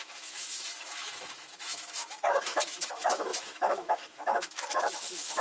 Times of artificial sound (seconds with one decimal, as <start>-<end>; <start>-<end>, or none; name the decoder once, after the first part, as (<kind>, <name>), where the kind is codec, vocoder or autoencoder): 0.0-5.4 (autoencoder, DAC-VAE)